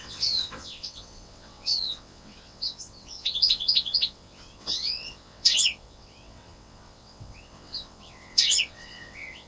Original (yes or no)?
no